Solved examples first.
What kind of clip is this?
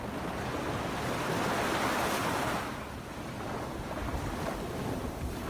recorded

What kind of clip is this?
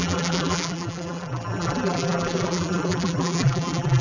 remade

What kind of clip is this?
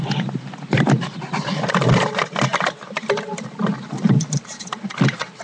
remade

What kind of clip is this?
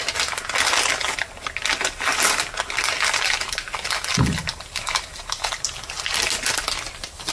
recorded